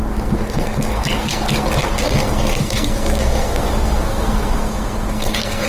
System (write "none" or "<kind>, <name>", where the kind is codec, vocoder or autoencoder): codec, SNAC